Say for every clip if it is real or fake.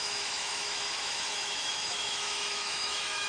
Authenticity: fake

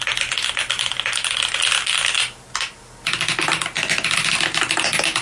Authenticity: real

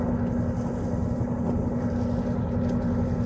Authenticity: real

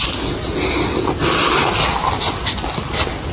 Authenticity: real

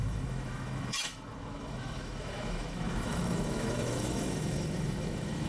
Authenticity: fake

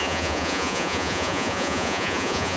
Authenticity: fake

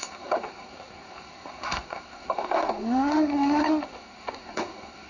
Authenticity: fake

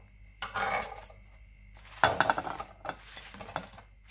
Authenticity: real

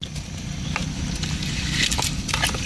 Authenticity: real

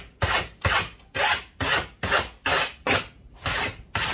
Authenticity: real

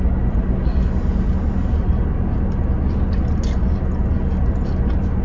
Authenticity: real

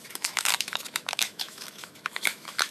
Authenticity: fake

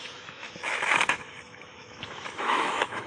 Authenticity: fake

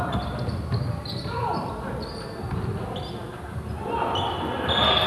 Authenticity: real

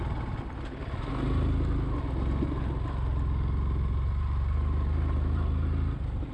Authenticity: real